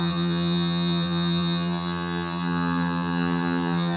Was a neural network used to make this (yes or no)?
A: yes